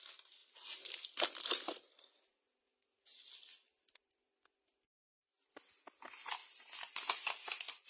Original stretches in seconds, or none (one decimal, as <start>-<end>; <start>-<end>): 0.0-3.5; 4.1-6.4; 6.9-7.9